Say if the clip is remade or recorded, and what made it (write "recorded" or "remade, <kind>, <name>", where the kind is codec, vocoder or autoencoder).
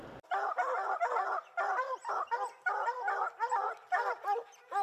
recorded